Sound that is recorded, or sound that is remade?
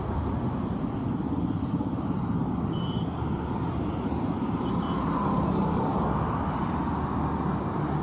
recorded